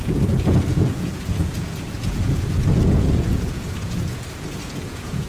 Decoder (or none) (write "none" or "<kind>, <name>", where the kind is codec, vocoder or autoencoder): vocoder, Vocos